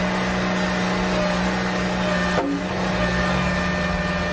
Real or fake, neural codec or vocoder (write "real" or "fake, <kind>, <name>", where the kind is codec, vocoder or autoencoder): real